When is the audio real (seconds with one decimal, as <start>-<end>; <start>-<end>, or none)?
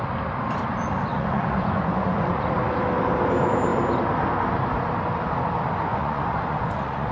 0.0-1.1; 2.4-5.9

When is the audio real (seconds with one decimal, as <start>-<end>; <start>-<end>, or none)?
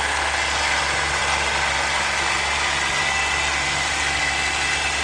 0.0-5.0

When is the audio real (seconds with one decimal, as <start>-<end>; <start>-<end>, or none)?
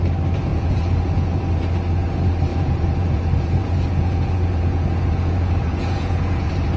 0.0-0.5; 1.4-2.5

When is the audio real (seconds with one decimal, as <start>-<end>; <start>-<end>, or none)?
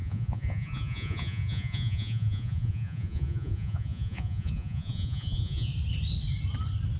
5.7-7.0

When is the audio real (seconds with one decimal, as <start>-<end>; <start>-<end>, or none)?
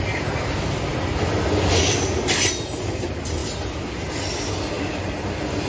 0.0-5.7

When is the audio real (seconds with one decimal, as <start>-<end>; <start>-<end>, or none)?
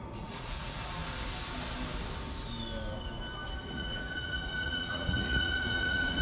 1.0-3.6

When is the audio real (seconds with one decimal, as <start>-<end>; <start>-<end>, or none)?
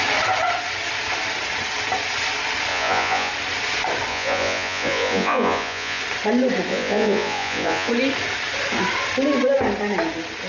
0.0-2.7; 3.3-4.1; 6.0-6.7; 7.9-10.5